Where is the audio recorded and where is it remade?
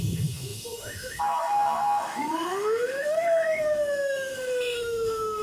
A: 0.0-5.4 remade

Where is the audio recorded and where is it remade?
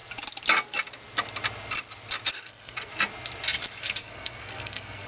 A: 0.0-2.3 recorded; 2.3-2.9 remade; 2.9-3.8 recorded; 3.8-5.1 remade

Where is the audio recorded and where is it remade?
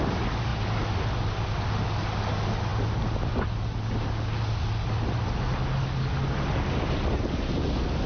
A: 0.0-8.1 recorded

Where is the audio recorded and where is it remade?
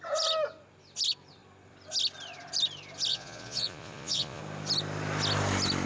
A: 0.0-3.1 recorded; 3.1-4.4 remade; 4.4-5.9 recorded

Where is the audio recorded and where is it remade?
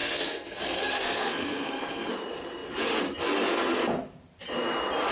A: 0.0-2.1 remade; 2.1-5.1 recorded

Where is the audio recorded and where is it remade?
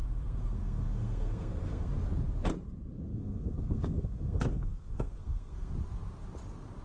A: 0.0-1.9 remade; 1.9-3.1 recorded; 3.1-5.7 remade; 5.7-6.8 recorded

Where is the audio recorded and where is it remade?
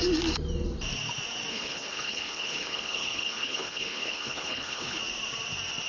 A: 0.0-1.5 recorded; 1.5-5.0 remade; 5.0-5.9 recorded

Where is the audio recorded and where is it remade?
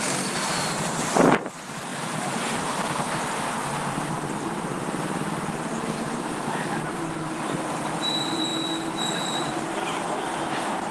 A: 0.0-8.5 remade; 8.5-9.1 recorded; 9.1-10.9 remade